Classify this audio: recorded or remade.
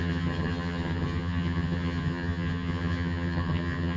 remade